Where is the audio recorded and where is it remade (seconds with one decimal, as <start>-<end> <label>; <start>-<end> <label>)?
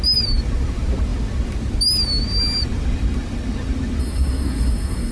0.0-4.0 recorded; 4.0-5.1 remade